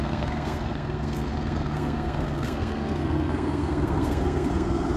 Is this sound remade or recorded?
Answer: remade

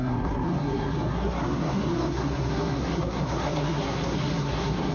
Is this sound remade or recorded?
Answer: remade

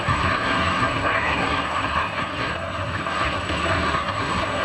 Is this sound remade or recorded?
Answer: remade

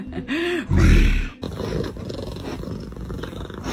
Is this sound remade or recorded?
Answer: recorded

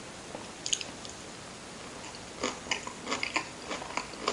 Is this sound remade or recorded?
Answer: recorded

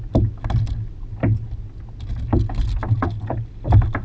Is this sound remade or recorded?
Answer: recorded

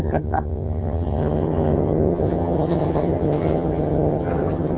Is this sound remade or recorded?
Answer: remade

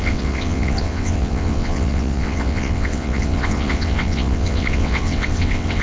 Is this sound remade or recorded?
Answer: remade